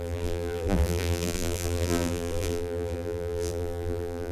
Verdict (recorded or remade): remade